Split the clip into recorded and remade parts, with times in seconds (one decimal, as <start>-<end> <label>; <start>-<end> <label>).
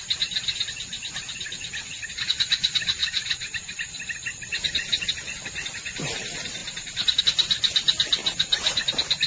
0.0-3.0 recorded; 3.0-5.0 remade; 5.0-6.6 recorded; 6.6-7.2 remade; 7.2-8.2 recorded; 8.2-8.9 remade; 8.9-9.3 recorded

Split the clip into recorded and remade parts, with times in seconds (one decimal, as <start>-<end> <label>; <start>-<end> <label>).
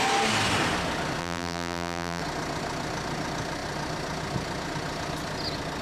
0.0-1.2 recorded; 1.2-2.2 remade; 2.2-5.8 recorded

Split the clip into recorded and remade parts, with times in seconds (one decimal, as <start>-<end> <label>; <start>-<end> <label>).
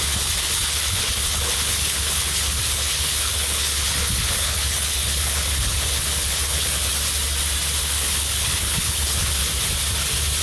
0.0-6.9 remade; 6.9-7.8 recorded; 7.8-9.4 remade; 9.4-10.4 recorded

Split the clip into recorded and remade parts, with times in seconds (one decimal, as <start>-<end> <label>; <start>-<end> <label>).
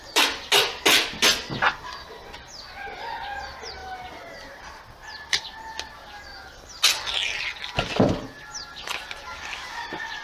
0.0-3.8 recorded; 3.8-5.4 remade; 5.4-10.2 recorded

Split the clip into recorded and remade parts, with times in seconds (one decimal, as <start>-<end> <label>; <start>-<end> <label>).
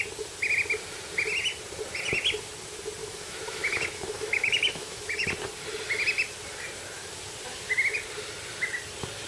0.0-3.0 recorded; 3.0-5.3 remade; 5.3-9.3 recorded